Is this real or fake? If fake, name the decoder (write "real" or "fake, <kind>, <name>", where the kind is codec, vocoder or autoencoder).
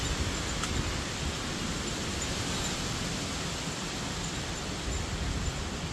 real